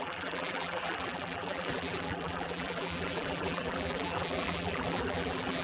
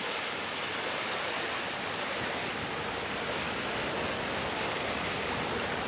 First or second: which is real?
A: second